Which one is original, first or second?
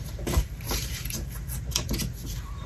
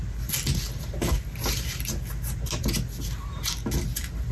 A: second